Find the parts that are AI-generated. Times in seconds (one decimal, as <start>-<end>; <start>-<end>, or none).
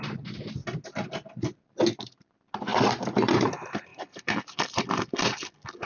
2.7-3.5; 3.9-4.8